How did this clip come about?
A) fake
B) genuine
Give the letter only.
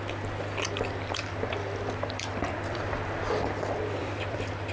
A